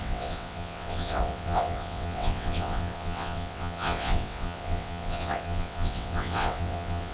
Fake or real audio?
fake